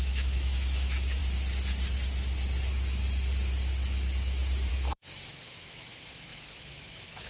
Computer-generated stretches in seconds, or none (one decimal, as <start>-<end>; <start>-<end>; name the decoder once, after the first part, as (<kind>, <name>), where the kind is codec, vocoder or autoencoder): 0.0-1.2 (autoencoder, DAC-VAE); 4.7-7.3